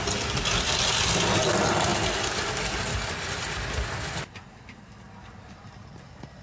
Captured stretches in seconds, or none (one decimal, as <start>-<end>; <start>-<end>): 0.0-6.4